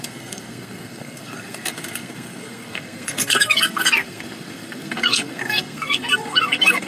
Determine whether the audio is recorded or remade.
remade